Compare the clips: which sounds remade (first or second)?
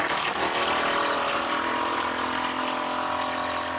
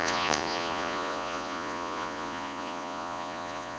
second